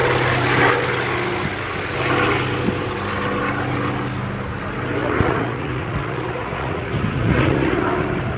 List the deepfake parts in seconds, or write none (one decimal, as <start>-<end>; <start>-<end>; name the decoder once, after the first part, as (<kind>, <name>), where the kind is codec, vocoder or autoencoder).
5.0-7.8 (vocoder, Vocos)